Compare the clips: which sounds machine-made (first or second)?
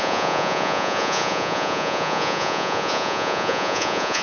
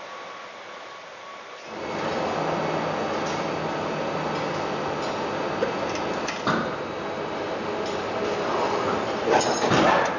first